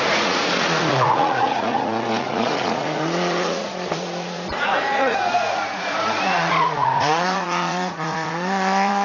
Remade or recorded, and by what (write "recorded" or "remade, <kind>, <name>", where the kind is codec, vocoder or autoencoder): remade, vocoder, Vocos